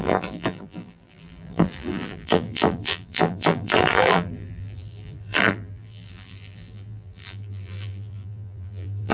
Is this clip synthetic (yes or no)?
yes